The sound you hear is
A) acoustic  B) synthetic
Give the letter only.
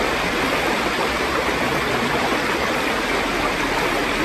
A